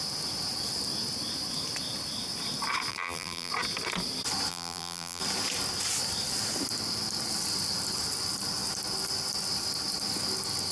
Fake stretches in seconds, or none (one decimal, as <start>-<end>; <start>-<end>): 2.9-3.5; 4.5-5.2